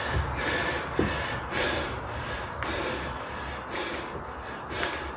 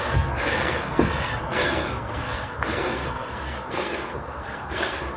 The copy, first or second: second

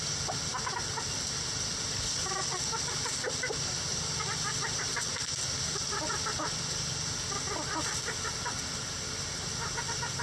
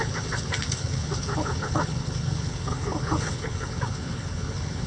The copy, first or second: second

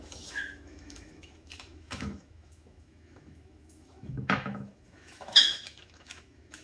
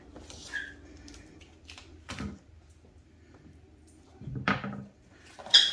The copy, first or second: first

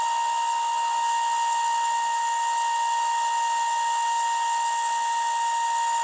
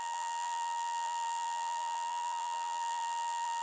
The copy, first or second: second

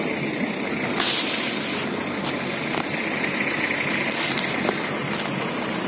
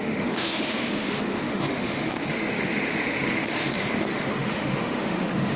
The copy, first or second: second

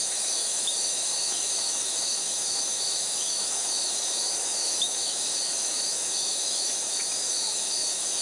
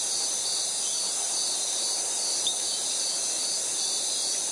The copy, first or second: first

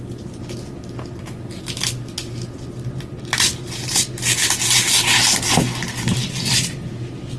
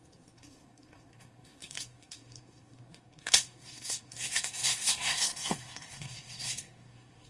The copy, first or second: second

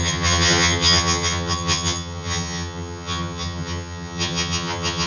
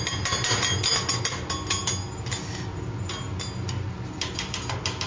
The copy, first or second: first